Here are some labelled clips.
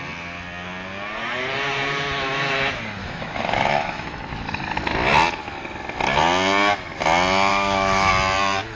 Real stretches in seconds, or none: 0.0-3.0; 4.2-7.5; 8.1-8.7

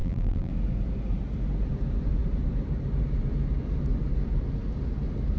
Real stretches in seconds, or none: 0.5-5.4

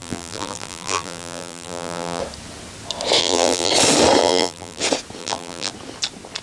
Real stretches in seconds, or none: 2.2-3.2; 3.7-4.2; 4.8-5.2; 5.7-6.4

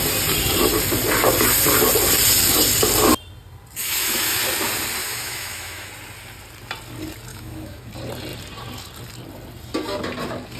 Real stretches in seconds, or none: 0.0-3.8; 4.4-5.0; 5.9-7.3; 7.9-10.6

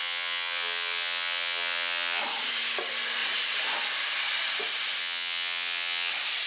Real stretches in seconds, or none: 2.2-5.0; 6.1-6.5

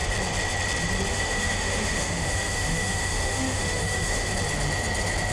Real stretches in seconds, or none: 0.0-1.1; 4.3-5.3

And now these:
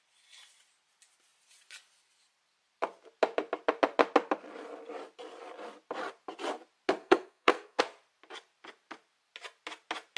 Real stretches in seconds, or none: 0.0-7.0; 7.8-10.2

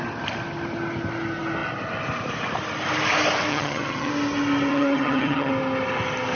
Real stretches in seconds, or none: 0.0-3.5; 4.1-4.7; 5.5-6.3